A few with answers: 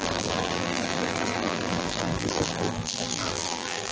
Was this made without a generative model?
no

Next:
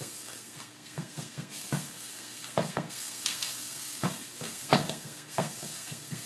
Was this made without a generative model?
no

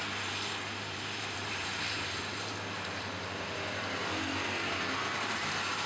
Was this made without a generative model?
no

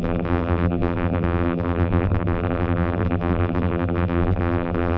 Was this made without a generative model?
no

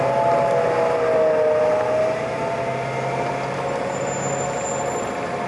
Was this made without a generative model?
yes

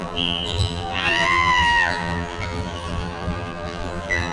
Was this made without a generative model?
no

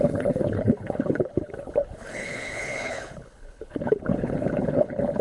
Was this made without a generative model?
no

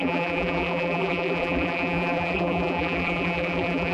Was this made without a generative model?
no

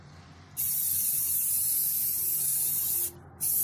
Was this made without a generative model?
yes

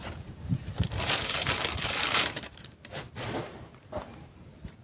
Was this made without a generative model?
no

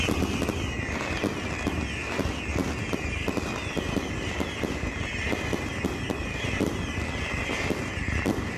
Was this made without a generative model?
yes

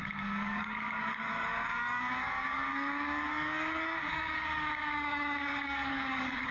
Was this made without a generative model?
no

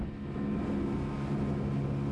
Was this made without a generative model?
yes